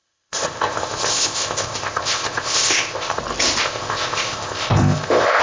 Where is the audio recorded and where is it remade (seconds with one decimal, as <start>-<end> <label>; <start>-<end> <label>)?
0.0-3.2 remade; 3.2-3.6 recorded; 3.6-5.4 remade